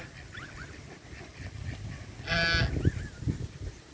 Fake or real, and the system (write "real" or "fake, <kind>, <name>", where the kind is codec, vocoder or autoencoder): real